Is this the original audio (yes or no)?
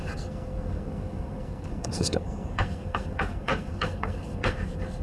no